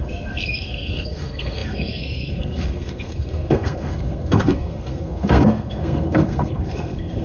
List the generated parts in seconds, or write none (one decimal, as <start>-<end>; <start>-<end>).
0.0-7.2